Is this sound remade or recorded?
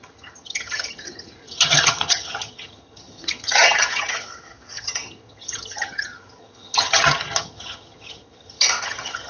remade